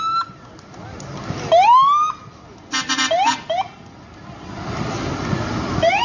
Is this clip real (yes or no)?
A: yes